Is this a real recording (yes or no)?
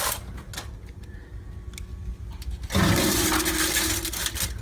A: yes